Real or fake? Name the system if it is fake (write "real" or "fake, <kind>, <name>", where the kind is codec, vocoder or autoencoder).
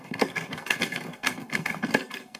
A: fake, codec, SNAC